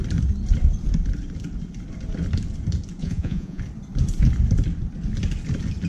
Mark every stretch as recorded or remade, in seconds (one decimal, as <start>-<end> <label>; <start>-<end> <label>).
0.0-3.0 recorded; 3.0-3.6 remade; 3.6-5.9 recorded